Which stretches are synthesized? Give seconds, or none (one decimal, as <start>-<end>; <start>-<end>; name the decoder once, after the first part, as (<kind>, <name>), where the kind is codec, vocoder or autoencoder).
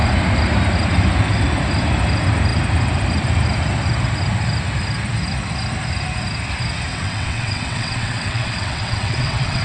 6.9-9.6 (vocoder, WaveNeXt)